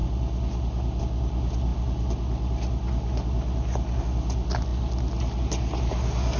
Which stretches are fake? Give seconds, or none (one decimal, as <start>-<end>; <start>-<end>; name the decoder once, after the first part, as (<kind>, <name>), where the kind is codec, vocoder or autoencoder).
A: none